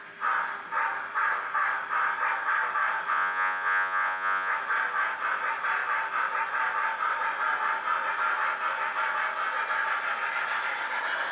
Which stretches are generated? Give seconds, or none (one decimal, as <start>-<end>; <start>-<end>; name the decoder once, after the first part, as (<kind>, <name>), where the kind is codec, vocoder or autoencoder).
3.1-4.5 (vocoder, Vocos)